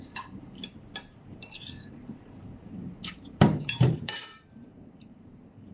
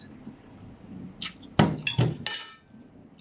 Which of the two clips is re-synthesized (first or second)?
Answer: first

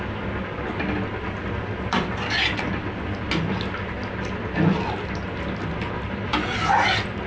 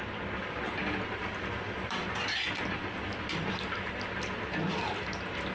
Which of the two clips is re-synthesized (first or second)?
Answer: second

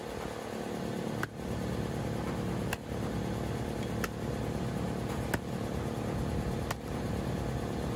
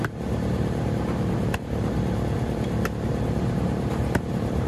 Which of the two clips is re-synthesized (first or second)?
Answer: second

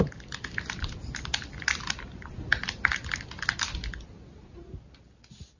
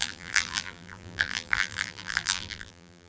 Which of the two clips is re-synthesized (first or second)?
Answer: second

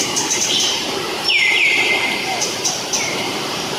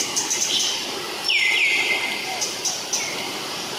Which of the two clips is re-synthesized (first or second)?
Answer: first